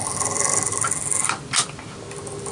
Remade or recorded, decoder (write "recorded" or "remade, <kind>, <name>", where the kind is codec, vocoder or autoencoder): recorded